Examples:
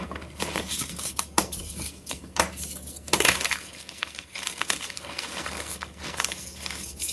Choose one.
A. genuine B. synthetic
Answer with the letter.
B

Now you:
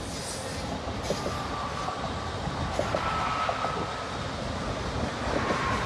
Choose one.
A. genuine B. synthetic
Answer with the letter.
A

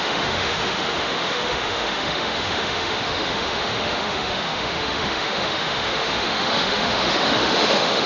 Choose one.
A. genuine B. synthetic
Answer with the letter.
B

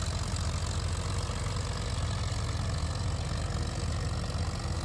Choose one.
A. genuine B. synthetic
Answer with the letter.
A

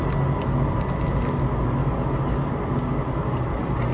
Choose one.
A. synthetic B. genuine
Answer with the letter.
B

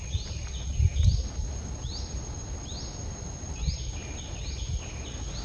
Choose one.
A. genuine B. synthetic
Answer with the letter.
A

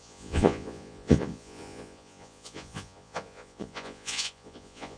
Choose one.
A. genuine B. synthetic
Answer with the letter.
B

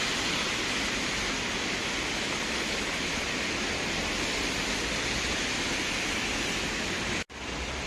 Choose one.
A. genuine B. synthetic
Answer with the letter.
A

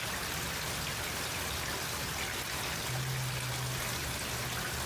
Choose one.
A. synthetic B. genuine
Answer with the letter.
B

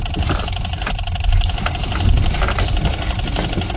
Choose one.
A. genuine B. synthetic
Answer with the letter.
B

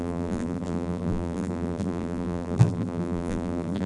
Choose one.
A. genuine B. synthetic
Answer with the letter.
B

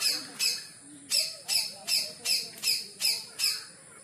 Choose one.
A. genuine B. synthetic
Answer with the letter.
A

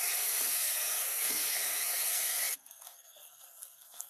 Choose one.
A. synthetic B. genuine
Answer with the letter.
A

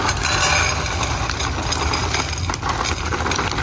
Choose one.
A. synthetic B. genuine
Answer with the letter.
B